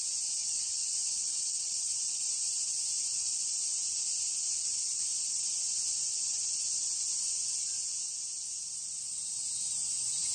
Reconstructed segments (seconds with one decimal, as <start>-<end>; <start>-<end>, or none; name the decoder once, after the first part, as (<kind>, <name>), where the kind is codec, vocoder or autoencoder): 0.4-2.2 (vocoder, WaveNeXt); 4.8-5.4